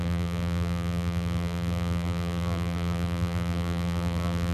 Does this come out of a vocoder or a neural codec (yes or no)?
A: yes